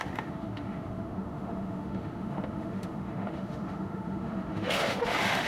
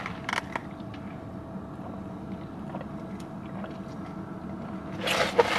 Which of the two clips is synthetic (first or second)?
first